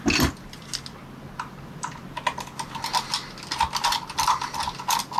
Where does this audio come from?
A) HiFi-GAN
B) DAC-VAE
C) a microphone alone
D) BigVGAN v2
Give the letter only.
C